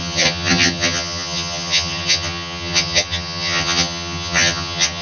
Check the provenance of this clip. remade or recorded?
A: remade